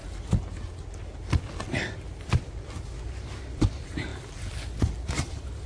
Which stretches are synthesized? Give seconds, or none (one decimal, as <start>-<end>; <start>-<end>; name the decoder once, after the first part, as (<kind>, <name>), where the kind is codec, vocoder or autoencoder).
3.4-5.7 (vocoder, BigVGAN v2)